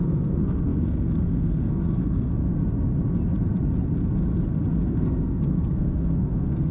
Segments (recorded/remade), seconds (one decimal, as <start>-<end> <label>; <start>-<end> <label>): 0.0-2.3 remade; 2.3-4.8 recorded; 4.8-6.7 remade